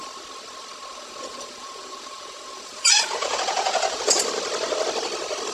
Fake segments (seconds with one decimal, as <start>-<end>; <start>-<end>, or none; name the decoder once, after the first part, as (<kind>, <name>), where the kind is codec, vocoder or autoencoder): 0.9-4.2 (vocoder, Vocos)